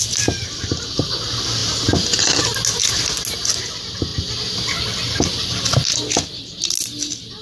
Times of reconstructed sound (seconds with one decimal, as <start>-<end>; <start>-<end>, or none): none